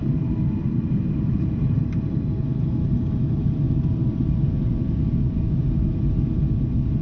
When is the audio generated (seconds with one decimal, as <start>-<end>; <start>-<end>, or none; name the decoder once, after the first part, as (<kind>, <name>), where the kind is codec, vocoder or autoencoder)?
0.0-4.2 (vocoder, BigVGAN v2)